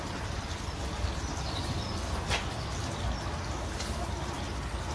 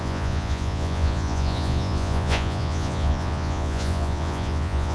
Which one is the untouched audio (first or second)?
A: first